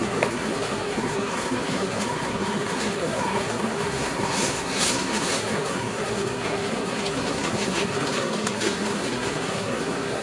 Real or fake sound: fake